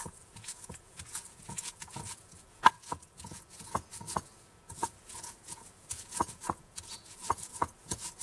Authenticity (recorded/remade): remade